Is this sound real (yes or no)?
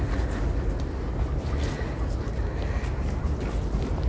yes